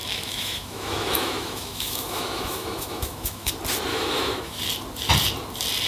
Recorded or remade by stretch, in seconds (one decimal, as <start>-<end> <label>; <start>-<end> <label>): 0.0-3.5 remade; 3.5-3.9 recorded; 3.9-4.6 remade; 4.6-5.9 recorded